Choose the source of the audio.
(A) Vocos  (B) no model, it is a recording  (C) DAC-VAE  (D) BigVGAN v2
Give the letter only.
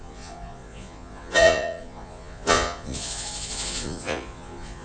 A